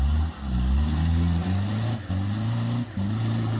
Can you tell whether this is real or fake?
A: real